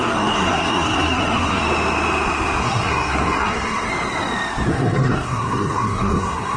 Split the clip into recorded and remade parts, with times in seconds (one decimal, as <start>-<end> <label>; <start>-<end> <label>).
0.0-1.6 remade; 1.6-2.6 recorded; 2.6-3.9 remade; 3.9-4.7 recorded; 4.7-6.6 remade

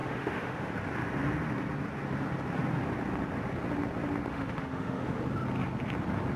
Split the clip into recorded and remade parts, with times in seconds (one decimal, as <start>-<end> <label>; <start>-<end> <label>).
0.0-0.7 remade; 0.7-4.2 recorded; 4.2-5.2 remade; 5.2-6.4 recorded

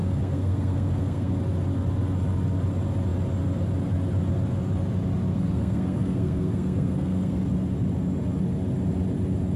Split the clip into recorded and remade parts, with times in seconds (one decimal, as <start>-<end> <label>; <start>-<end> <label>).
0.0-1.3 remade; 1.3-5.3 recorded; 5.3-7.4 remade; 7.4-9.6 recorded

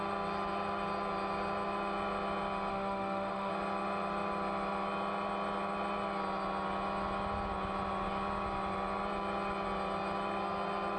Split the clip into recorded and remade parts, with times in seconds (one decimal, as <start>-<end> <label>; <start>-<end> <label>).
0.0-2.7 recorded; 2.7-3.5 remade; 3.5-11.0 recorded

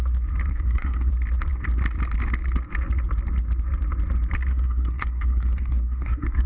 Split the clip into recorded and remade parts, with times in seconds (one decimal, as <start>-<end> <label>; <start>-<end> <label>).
0.0-0.5 recorded; 0.5-1.1 remade; 1.1-4.5 recorded; 4.5-6.5 remade